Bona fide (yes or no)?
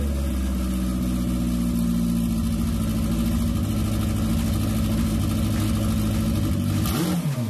yes